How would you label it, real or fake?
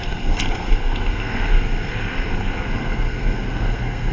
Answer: fake